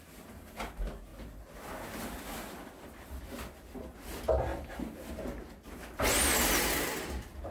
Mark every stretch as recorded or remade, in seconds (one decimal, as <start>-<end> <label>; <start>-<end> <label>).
0.0-4.5 recorded; 4.5-5.1 remade; 5.1-7.5 recorded